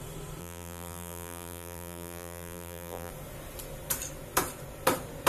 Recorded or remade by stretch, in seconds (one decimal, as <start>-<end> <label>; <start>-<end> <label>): 0.0-0.4 recorded; 0.4-3.1 remade; 3.1-5.3 recorded